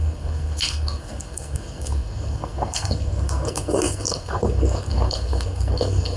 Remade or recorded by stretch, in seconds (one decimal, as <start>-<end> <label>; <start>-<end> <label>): 0.0-6.2 remade